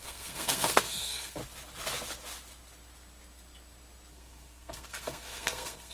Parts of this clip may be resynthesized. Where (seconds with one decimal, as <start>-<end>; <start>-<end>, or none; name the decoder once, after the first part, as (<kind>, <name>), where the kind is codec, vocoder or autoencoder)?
0.0-1.4 (codec, SNAC); 4.1-5.9